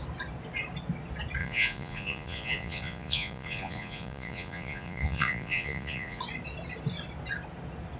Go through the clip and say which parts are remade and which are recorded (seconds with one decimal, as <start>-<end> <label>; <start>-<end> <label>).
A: 0.0-1.4 recorded; 1.4-6.2 remade; 6.2-8.0 recorded